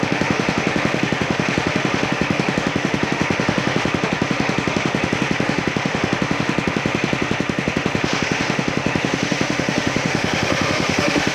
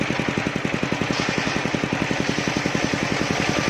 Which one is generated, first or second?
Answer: first